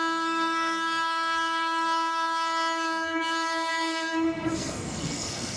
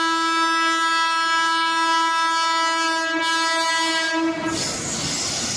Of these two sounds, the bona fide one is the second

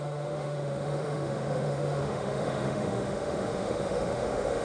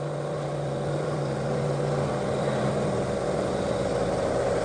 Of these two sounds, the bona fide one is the second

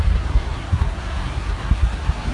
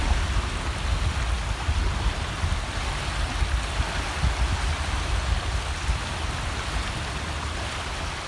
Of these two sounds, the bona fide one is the second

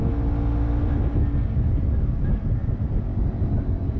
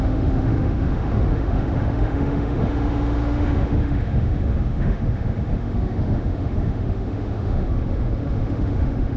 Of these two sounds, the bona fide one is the first